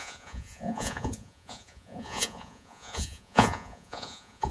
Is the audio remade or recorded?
remade